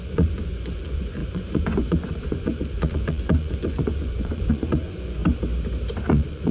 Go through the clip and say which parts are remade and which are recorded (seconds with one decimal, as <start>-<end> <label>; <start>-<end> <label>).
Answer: 0.0-5.2 remade; 5.2-6.1 recorded; 6.1-6.5 remade